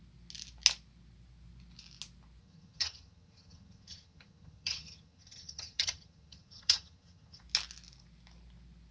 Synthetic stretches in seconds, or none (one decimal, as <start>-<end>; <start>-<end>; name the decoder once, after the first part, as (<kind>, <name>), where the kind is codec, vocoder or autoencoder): 2.4-7.4 (vocoder, HiFi-GAN)